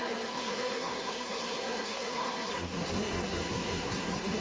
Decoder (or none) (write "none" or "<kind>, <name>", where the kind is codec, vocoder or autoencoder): codec, SNAC